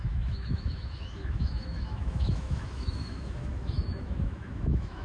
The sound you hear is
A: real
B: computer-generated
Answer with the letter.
B